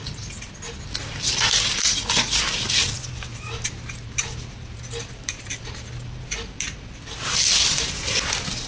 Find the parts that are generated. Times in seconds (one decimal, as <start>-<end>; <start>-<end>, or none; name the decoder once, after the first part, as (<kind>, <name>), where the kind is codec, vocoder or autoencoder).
1.8-2.4 (vocoder, Vocos)